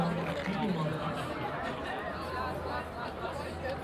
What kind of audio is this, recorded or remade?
recorded